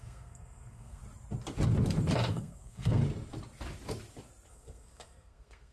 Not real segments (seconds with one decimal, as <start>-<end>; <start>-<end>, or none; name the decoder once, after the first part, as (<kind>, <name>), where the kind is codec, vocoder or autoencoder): 0.0-1.0 (codec, SNAC); 2.3-3.0; 4.5-5.7